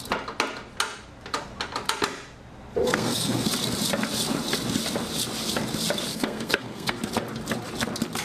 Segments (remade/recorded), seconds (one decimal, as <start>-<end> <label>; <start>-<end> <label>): 0.0-2.8 recorded; 2.8-3.5 remade; 3.5-6.1 recorded; 6.1-7.0 remade; 7.0-8.2 recorded